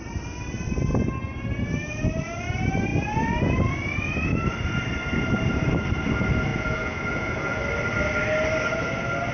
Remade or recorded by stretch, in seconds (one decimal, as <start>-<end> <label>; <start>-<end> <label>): 0.0-6.5 recorded; 6.5-7.6 remade; 7.6-9.3 recorded